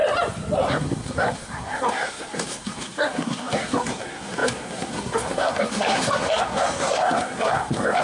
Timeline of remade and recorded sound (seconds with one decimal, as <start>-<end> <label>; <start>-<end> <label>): 0.0-0.7 recorded; 0.7-8.0 remade